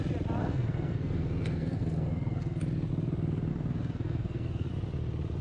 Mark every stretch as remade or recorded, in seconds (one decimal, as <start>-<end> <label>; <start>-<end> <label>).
0.0-0.4 recorded; 0.4-2.6 remade; 2.6-3.5 recorded; 3.5-4.7 remade; 4.7-5.4 recorded